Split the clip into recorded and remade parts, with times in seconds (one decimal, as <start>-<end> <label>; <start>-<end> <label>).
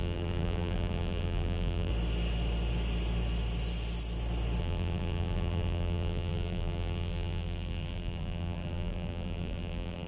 0.0-1.9 remade; 1.9-4.6 recorded; 4.6-10.1 remade